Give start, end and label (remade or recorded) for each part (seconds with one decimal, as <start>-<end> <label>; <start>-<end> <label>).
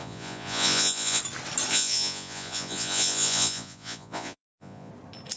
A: 0.0-1.2 remade; 1.2-1.7 recorded; 1.7-4.9 remade; 4.9-5.4 recorded